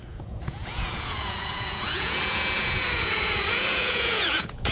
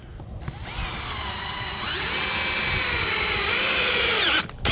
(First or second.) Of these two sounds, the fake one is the first